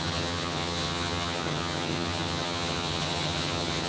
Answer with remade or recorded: remade